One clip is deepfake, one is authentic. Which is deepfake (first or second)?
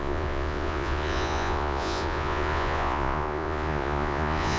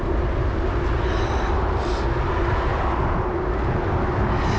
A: first